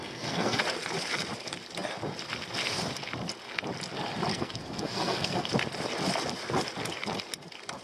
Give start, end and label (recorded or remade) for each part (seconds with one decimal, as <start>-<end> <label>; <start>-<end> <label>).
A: 0.0-0.6 remade; 0.6-4.3 recorded; 4.3-5.5 remade; 5.5-7.8 recorded